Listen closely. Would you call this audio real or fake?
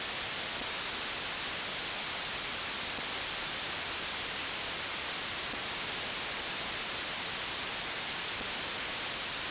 real